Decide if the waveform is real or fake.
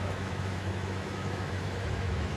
fake